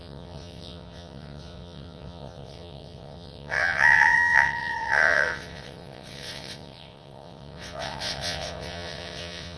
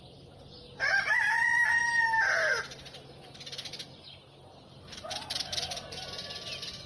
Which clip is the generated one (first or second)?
first